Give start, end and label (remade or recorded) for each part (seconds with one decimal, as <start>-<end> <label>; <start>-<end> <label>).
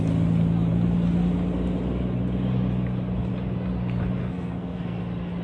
0.0-4.2 recorded; 4.2-5.0 remade; 5.0-5.4 recorded